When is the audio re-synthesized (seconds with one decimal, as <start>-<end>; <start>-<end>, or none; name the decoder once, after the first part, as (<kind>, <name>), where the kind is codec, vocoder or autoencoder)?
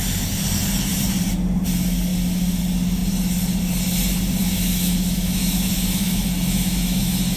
4.4-7.4 (autoencoder, DAC-VAE)